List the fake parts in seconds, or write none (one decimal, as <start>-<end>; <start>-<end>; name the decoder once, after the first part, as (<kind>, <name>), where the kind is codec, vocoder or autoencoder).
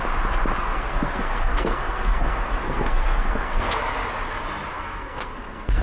0.6-3.8 (codec, SNAC); 4.7-5.8